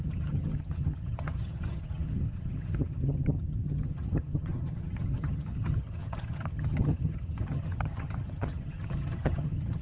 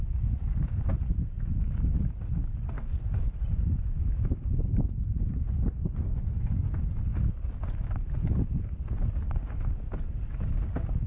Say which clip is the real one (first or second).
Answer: second